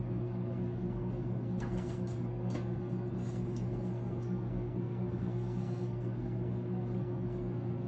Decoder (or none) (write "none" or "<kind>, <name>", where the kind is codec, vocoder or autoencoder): codec, SNAC